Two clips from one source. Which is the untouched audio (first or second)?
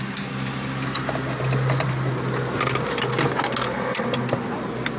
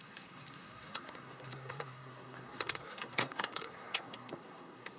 first